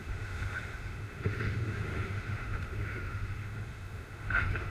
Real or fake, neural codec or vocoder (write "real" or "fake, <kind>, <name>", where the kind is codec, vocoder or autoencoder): fake, autoencoder, DAC-VAE